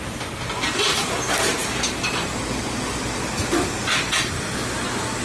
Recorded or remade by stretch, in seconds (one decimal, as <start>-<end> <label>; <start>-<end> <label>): 0.0-5.2 recorded